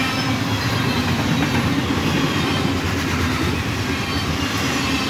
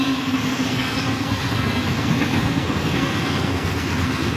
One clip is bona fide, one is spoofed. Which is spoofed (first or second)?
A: second